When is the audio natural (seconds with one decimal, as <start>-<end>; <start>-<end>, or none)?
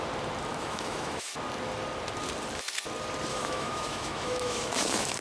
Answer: 0.0-0.5; 1.3-3.3